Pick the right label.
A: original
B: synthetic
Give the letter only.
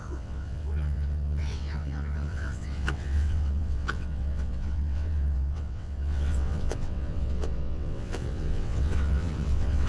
B